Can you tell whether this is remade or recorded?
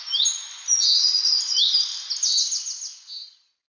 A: recorded